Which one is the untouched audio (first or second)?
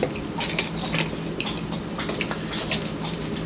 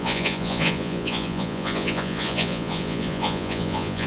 first